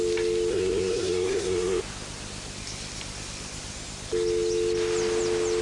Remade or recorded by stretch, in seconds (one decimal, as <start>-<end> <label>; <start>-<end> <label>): 0.0-0.5 recorded; 0.5-1.8 remade; 1.8-5.6 recorded